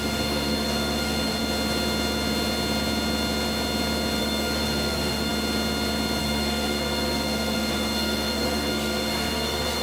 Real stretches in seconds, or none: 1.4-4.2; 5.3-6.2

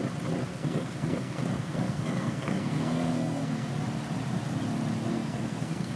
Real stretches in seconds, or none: 0.0-0.5; 3.7-5.1

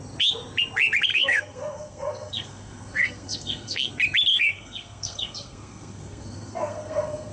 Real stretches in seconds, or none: 0.0-1.1; 3.9-4.3

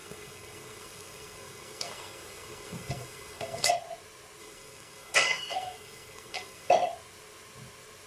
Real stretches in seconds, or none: 3.7-4.4; 6.7-8.1

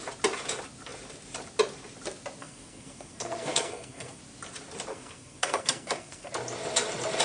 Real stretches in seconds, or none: 0.0-2.4; 4.2-4.9; 6.3-7.2

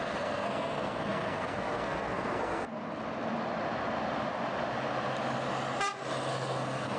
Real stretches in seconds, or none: 2.8-6.3

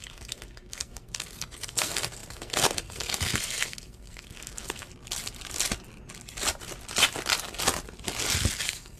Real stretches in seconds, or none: 4.9-8.6

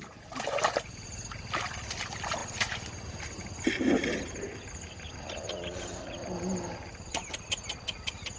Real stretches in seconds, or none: 0.0-8.4